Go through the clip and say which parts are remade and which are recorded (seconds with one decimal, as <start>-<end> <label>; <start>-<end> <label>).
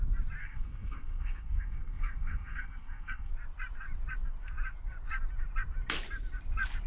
0.0-0.4 recorded; 0.4-3.3 remade; 3.3-6.9 recorded